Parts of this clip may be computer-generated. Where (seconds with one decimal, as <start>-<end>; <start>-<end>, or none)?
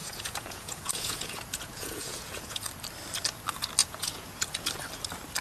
0.0-2.7; 3.8-4.7